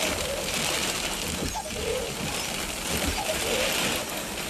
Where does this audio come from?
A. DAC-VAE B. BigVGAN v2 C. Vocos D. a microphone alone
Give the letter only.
B